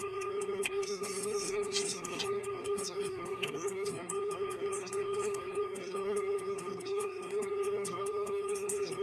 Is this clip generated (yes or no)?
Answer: yes